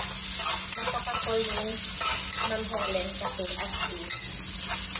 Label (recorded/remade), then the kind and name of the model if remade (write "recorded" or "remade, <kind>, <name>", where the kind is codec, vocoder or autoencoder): recorded